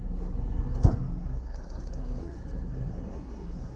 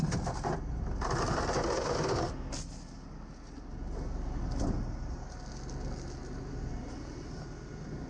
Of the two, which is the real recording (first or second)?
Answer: second